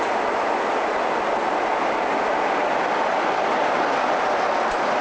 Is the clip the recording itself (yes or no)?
yes